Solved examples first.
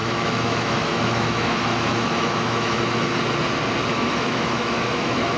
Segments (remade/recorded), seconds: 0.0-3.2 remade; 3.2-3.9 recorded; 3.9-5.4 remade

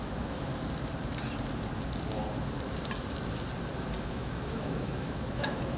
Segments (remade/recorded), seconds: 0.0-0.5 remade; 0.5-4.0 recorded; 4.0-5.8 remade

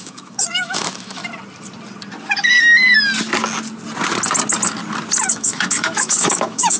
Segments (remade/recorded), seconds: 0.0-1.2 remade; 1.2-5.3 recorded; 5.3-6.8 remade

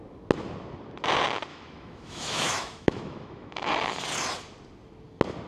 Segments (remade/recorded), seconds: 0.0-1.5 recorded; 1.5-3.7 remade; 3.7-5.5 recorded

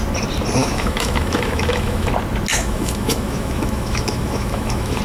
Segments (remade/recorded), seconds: 0.0-0.6 recorded; 0.6-2.1 remade; 2.1-2.5 recorded; 2.5-5.0 remade